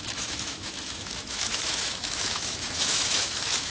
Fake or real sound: fake